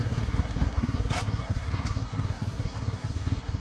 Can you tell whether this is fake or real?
fake